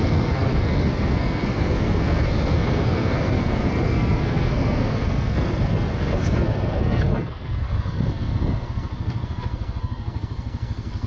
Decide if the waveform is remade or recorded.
remade